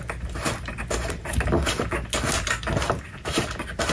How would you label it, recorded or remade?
recorded